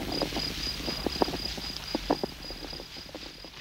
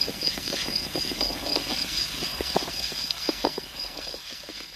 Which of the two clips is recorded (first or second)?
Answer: first